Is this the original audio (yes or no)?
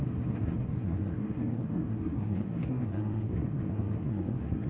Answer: no